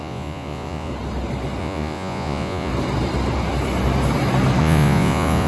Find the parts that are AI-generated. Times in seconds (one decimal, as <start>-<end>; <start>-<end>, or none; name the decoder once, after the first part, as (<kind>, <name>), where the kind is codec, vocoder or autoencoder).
0.0-0.9 (vocoder, Vocos); 1.6-2.7; 4.6-5.5